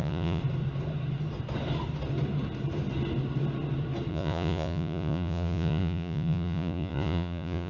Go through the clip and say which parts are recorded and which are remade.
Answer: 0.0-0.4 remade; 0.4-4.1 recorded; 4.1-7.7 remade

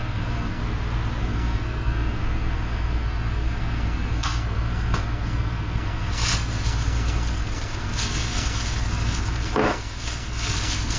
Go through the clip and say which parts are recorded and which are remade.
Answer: 0.0-0.6 remade; 0.6-1.2 recorded; 1.2-11.0 remade

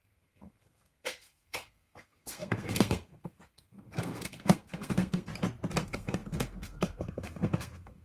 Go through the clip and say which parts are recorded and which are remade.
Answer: 0.0-5.3 remade; 5.3-5.8 recorded; 5.8-8.0 remade

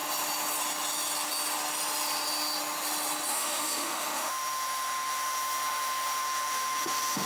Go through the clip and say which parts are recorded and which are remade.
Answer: 0.0-3.3 recorded; 3.3-7.3 remade

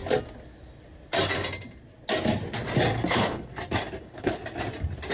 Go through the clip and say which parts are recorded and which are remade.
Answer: 0.0-3.1 recorded; 3.1-3.5 remade; 3.5-4.0 recorded; 4.0-4.4 remade; 4.4-5.1 recorded

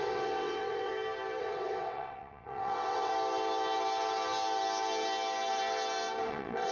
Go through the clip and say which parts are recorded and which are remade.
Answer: 0.0-0.9 remade; 0.9-1.4 recorded; 1.4-3.1 remade; 3.1-6.3 recorded; 6.3-6.7 remade